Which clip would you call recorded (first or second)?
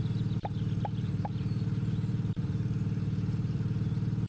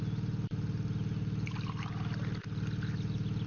second